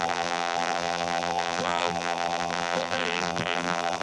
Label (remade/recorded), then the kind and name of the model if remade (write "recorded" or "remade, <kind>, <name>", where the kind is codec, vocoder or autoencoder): remade, vocoder, BigVGAN v2